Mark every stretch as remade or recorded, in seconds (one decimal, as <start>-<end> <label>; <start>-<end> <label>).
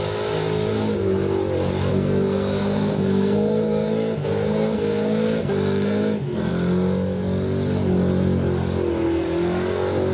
0.0-1.9 recorded; 1.9-6.5 remade; 6.5-10.1 recorded